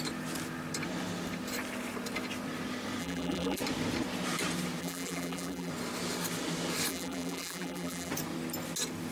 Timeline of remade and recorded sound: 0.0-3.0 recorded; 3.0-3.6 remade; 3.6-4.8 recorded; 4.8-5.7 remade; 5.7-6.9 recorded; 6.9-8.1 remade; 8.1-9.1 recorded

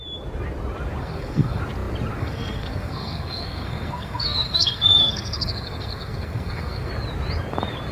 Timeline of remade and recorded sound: 0.0-1.0 recorded; 1.0-1.6 remade; 1.6-2.2 recorded; 2.2-6.9 remade; 6.9-7.9 recorded

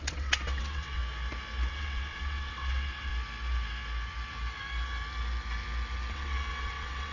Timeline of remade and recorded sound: 0.0-1.0 remade; 1.0-1.7 recorded; 1.7-3.1 remade; 3.1-6.1 recorded; 6.1-7.1 remade

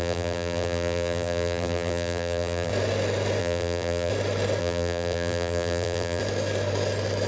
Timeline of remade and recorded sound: 0.0-2.7 remade; 2.7-3.4 recorded; 3.4-4.1 remade; 4.1-4.6 recorded; 4.6-6.2 remade; 6.2-7.3 recorded

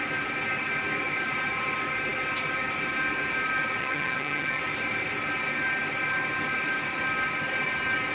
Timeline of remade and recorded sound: 0.0-3.8 recorded; 3.8-4.6 remade; 4.6-8.1 recorded

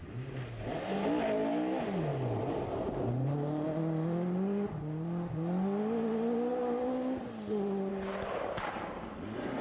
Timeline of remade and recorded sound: 0.0-9.6 recorded

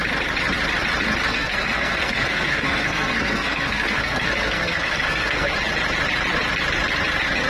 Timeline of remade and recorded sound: 0.0-1.3 recorded; 1.3-5.5 remade; 5.5-7.5 recorded